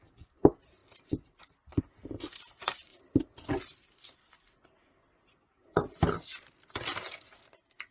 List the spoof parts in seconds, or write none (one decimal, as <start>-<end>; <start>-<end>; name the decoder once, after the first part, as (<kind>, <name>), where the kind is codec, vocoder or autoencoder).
7.3-7.9 (vocoder, BigVGAN v2)